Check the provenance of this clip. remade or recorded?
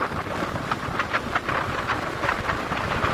recorded